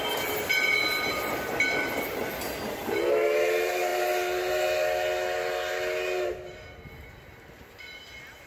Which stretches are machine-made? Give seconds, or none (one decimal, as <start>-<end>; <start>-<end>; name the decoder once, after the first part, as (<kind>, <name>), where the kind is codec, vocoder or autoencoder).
none